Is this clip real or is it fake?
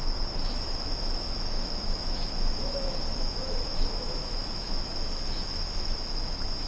fake